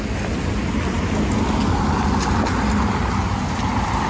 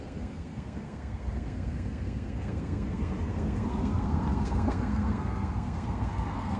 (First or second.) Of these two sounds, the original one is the first